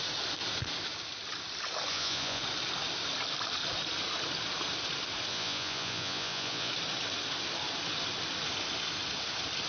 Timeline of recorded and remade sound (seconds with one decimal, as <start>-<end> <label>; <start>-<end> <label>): 0.0-1.9 recorded; 1.9-2.4 remade; 2.4-5.3 recorded; 5.3-6.7 remade; 6.7-9.7 recorded